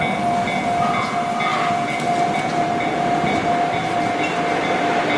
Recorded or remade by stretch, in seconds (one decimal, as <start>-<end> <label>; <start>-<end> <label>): 0.0-5.2 recorded